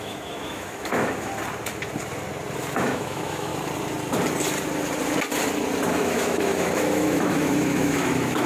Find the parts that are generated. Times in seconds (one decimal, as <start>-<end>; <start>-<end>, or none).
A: 0.0-1.3; 2.8-3.5; 5.9-8.5